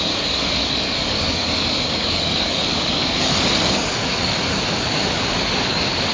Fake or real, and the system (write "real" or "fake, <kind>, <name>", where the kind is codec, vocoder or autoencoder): fake, codec, DAC